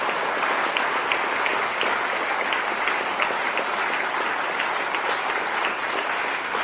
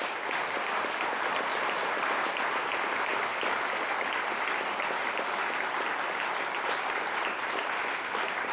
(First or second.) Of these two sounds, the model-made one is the second